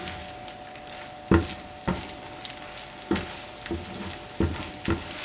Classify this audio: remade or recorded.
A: recorded